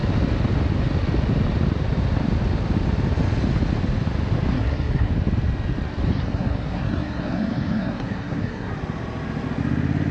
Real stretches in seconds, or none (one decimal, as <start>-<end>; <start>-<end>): 0.0-4.5; 5.1-6.1; 8.7-10.1